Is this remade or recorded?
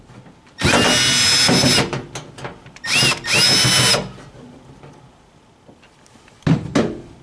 recorded